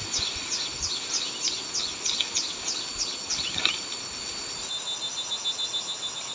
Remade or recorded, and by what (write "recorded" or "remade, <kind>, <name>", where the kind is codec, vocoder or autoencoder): recorded